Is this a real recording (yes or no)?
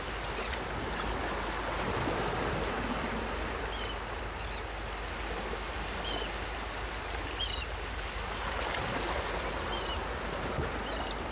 yes